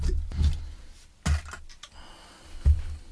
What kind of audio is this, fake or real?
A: real